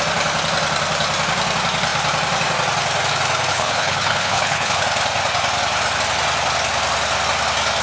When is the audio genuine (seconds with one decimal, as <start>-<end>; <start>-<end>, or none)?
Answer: 0.0-3.5; 4.8-7.8